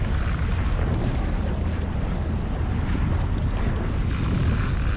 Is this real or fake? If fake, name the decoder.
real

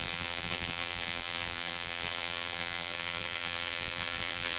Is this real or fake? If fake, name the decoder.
fake, vocoder, BigVGAN v2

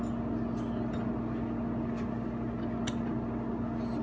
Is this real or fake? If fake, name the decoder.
real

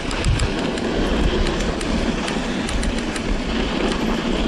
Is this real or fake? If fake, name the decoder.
real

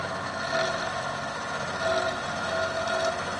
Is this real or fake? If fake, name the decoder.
real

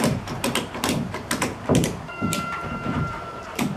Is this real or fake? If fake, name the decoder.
fake, vocoder, BigVGAN v2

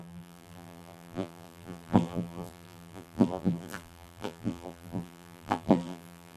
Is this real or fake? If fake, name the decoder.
fake, vocoder, BigVGAN v2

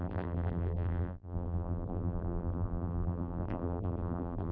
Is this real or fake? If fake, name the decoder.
fake, vocoder, BigVGAN v2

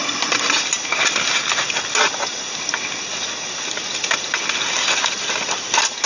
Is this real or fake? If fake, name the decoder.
real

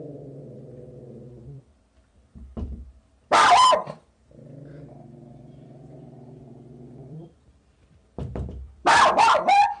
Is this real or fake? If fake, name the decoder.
fake, vocoder, BigVGAN v2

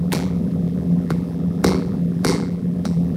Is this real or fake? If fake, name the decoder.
fake, vocoder, BigVGAN v2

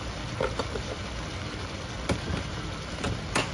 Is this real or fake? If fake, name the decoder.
real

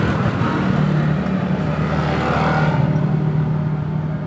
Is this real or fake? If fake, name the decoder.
real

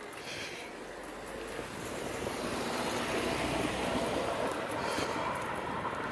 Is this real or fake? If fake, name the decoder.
real